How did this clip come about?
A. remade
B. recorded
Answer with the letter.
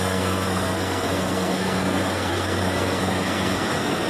A